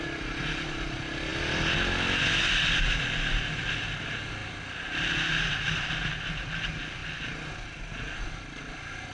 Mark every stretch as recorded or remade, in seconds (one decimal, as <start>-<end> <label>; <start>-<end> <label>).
0.0-9.1 recorded